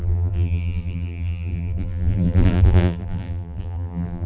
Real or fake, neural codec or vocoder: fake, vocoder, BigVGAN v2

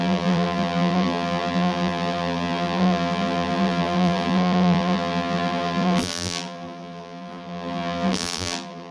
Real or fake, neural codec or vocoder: fake, vocoder, BigVGAN v2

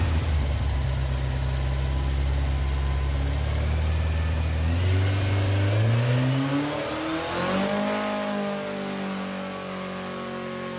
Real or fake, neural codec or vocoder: real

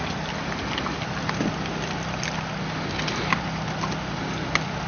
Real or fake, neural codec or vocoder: real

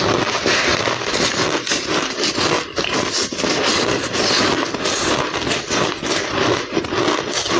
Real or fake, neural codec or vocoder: real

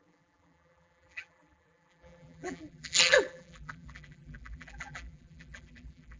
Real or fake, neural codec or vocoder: fake, vocoder, BigVGAN v2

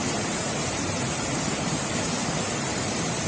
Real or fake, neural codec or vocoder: fake, vocoder, BigVGAN v2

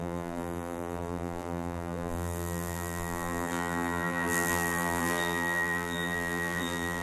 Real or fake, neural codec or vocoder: fake, vocoder, BigVGAN v2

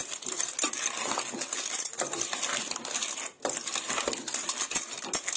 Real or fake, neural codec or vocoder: real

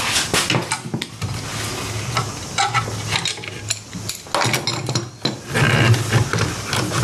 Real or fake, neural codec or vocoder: real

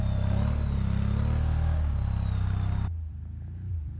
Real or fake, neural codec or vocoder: real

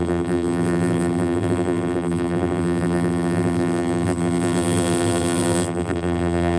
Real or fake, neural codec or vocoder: fake, vocoder, BigVGAN v2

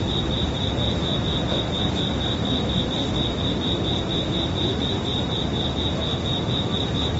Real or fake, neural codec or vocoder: fake, vocoder, BigVGAN v2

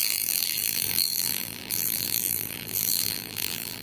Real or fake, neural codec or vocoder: fake, vocoder, BigVGAN v2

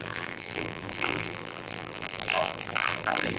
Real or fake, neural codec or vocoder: fake, vocoder, BigVGAN v2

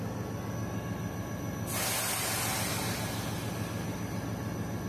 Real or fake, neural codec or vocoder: real